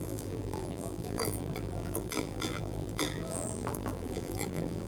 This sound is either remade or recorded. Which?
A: remade